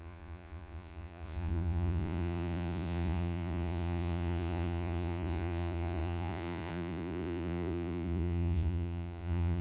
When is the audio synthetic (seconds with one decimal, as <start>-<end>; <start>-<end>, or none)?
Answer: 0.0-9.6